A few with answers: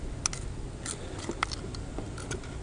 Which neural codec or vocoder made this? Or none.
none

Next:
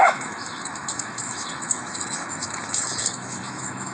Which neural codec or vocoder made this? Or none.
autoencoder, DAC-VAE